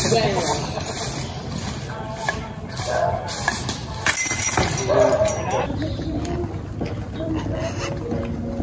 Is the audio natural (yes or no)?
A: yes